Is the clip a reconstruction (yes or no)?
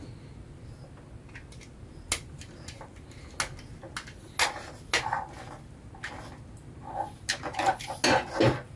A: no